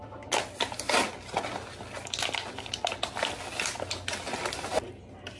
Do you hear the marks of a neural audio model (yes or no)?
no